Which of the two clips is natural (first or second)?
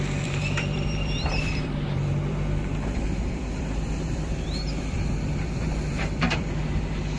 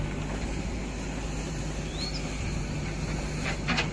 second